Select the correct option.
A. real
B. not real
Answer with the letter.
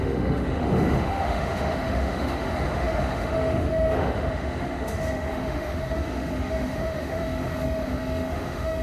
B